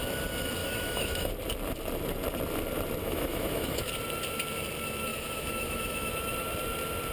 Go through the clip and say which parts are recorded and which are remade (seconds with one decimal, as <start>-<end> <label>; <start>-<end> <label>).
0.0-0.6 recorded; 0.6-1.3 remade; 1.3-3.0 recorded; 3.0-3.9 remade; 3.9-5.1 recorded; 5.1-6.1 remade; 6.1-7.1 recorded